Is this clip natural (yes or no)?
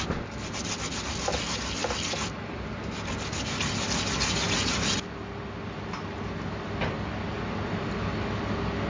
yes